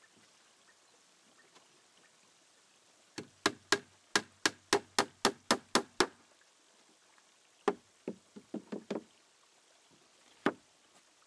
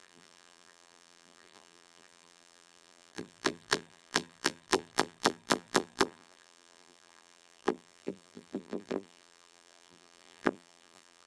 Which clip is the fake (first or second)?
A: second